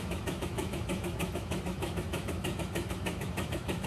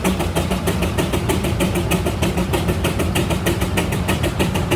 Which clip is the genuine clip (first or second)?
second